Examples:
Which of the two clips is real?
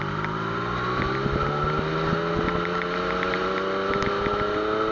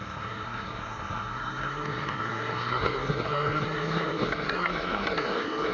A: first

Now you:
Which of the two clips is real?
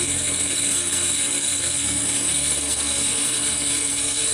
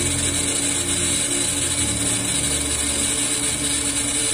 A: second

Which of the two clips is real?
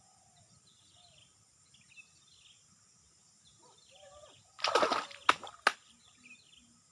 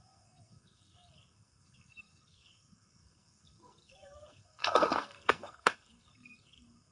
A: first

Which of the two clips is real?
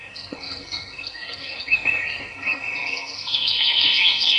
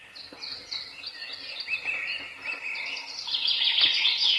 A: second